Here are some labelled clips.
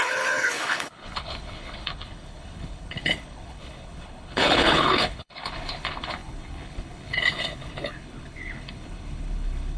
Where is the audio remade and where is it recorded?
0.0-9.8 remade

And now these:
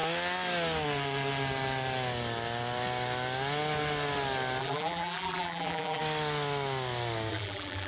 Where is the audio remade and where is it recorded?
0.0-4.6 recorded; 4.6-6.0 remade; 6.0-7.3 recorded; 7.3-7.9 remade

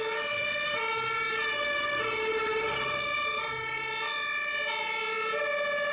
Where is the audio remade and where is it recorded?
0.0-0.4 recorded; 0.4-3.9 remade; 3.9-5.9 recorded

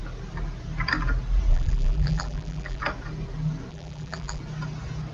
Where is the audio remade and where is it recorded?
0.0-1.5 recorded; 1.5-2.8 remade; 2.8-3.7 recorded; 3.7-4.4 remade; 4.4-5.1 recorded

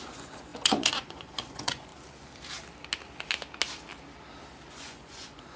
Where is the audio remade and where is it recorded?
0.0-1.9 remade; 1.9-4.7 recorded; 4.7-5.6 remade